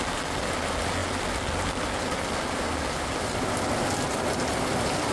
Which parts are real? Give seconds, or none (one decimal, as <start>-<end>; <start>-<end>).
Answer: 0.0-5.1